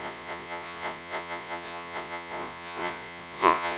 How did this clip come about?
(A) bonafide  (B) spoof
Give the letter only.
B